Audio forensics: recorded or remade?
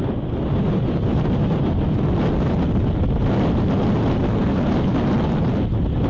recorded